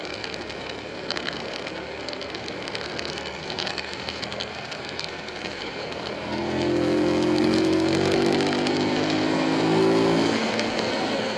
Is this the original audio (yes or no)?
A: no